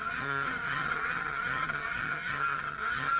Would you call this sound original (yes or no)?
no